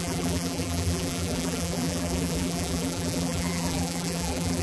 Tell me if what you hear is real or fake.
fake